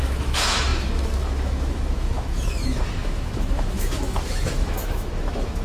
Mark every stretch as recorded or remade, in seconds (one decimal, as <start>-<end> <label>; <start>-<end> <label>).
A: 0.0-5.6 remade